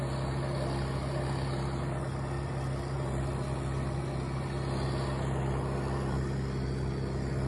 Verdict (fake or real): real